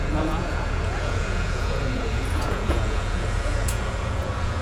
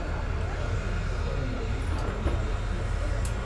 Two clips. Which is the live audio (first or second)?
second